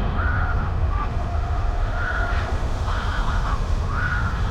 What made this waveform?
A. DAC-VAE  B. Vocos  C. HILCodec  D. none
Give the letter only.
A